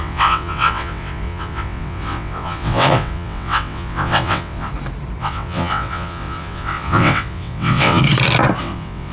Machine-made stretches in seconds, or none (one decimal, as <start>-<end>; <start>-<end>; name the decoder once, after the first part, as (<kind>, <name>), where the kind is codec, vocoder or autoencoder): 0.0-4.7 (vocoder, WaveNeXt); 5.2-8.0; 8.6-9.1